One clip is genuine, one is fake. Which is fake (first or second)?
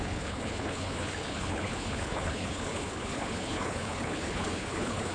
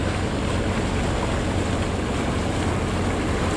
first